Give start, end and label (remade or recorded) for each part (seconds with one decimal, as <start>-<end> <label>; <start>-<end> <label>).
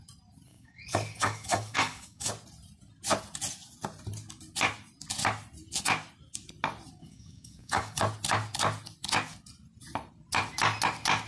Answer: 0.0-0.5 recorded; 0.5-2.3 remade; 2.3-7.0 recorded; 7.0-8.0 remade; 8.0-11.3 recorded